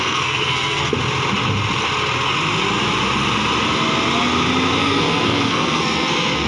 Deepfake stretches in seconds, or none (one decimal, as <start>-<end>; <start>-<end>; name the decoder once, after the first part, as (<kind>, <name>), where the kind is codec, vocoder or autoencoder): 0.0-0.9 (codec, SNAC); 4.8-6.5